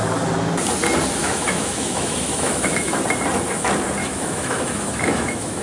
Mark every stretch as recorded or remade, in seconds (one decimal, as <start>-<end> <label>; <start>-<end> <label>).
0.0-1.2 recorded; 1.2-3.0 remade; 3.0-4.0 recorded; 4.0-5.6 remade